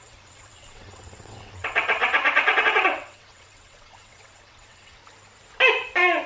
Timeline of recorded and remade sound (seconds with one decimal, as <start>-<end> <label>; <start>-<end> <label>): 0.0-5.0 remade; 5.0-6.3 recorded